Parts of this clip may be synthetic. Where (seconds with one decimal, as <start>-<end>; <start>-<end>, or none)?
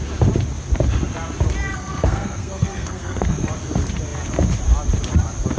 1.7-3.5